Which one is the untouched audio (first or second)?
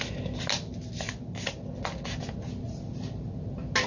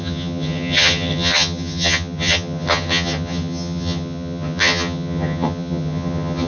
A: first